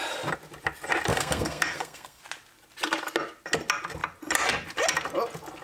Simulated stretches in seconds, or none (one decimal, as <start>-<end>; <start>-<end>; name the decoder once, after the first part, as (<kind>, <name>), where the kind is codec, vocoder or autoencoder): 1.1-2.2 (codec, SNAC)